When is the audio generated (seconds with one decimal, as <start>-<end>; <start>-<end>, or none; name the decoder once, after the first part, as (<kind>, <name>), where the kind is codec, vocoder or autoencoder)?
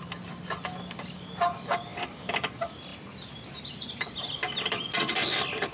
1.9-2.5 (vocoder, BigVGAN v2)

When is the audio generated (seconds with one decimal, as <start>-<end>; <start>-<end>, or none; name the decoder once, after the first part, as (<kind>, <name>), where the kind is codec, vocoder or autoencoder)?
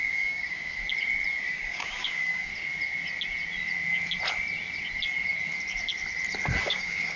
0.0-0.8 (codec, DAC); 1.3-2.5; 6.6-7.2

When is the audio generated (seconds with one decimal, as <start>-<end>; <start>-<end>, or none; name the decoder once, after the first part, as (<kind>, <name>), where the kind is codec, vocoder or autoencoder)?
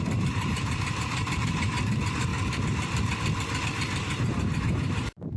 0.0-2.3 (vocoder, BigVGAN v2); 3.6-5.4